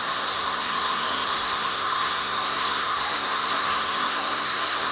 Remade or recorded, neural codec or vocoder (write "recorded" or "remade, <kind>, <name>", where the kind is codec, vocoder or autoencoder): remade, codec, SNAC